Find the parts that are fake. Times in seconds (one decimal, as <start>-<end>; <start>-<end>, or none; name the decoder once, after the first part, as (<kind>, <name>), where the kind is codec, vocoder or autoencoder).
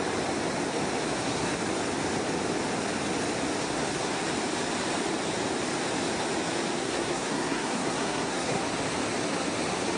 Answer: 1.0-1.6 (codec, SNAC); 3.6-4.2; 6.8-8.6